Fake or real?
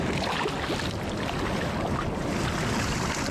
real